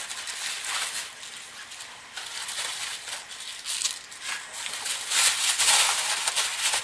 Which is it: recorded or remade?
recorded